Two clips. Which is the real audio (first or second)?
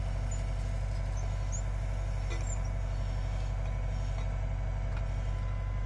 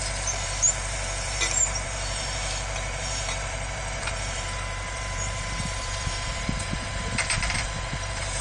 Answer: first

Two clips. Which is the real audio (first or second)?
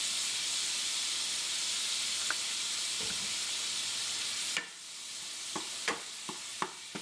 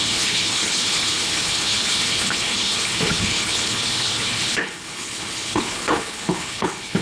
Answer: first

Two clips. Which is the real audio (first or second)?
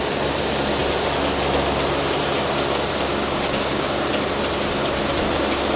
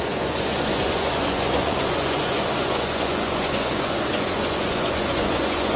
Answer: first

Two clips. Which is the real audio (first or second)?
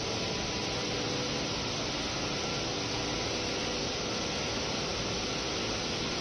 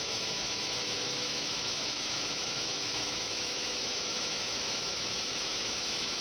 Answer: first